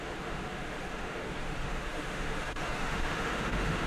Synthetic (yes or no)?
yes